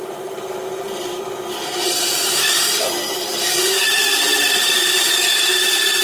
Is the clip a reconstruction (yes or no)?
yes